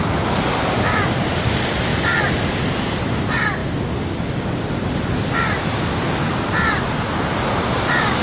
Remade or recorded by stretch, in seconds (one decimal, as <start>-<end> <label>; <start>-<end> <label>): 0.0-8.2 recorded